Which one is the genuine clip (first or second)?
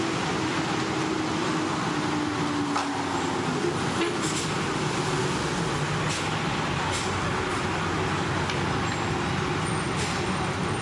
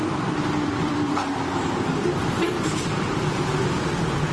first